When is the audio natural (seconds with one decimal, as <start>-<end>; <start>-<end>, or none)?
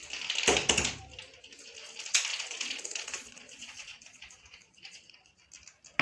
0.0-2.3; 5.4-6.0